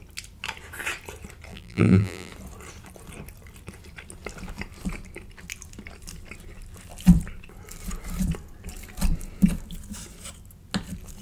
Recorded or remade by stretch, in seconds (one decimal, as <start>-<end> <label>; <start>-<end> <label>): 0.0-1.5 recorded; 1.5-2.3 remade; 2.3-11.2 recorded